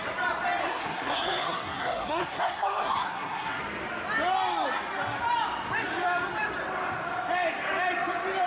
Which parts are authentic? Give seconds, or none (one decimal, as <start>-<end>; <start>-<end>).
0.0-0.6; 3.6-8.5